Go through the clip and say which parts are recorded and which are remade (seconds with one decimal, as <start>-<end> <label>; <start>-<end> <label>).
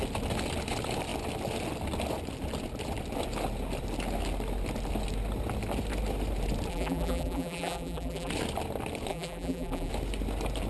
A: 0.0-6.7 recorded; 6.7-8.3 remade; 8.3-9.1 recorded; 9.1-9.9 remade; 9.9-10.7 recorded